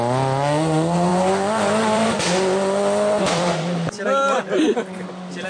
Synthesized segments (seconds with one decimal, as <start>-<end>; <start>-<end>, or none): 1.1-4.4